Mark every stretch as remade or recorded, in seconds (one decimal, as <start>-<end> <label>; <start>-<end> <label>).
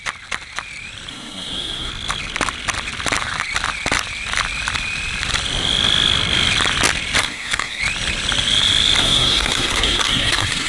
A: 0.0-1.1 recorded; 1.1-1.9 remade; 1.9-7.2 recorded; 7.2-7.8 remade; 7.8-9.0 recorded; 9.0-10.7 remade